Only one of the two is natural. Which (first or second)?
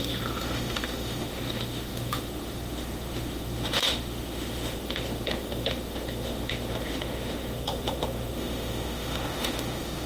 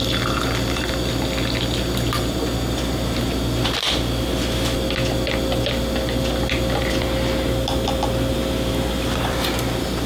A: second